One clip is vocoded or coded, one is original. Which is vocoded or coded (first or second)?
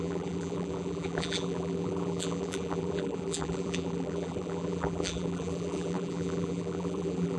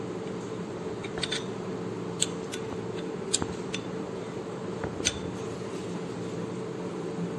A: first